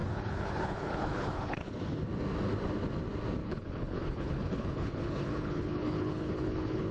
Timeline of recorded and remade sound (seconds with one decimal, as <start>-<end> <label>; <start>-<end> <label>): 0.0-1.8 remade; 1.8-3.4 recorded; 3.4-6.9 remade